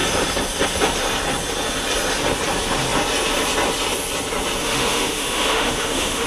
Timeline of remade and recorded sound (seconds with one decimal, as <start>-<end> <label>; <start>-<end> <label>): 0.0-4.6 recorded; 4.6-6.3 remade